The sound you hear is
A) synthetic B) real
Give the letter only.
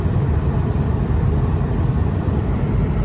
A